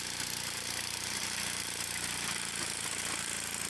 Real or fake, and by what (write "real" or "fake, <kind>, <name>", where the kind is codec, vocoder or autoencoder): fake, vocoder, BigVGAN v2